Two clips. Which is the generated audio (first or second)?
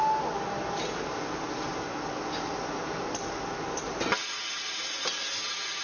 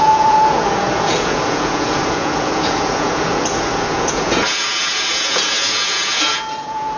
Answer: second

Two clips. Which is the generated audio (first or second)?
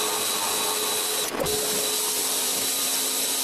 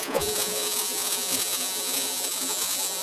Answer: second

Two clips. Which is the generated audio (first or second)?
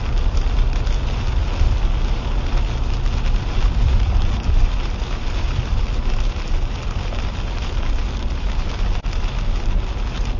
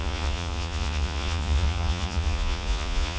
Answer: second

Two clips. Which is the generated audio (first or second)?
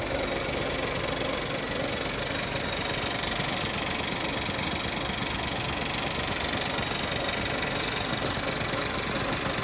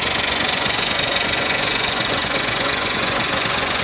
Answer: second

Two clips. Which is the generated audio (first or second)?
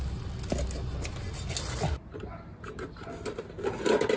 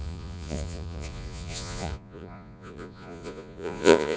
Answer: second